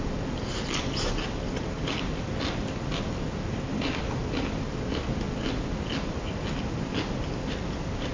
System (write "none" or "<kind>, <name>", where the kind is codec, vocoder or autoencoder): none